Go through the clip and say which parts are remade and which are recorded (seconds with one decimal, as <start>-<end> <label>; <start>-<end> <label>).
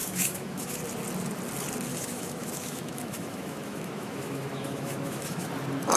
0.0-0.8 remade; 0.8-1.9 recorded; 1.9-5.5 remade; 5.5-6.0 recorded